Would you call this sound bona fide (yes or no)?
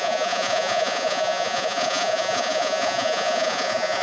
no